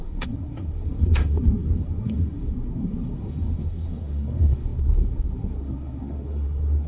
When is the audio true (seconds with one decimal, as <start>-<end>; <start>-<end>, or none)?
none